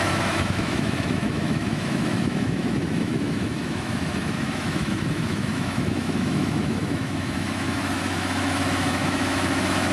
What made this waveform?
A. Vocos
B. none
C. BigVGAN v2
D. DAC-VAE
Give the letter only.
D